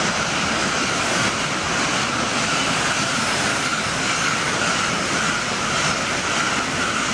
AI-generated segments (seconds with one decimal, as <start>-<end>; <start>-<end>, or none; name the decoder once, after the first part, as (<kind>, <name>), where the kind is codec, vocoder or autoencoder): 3.5-4.9 (codec, DAC)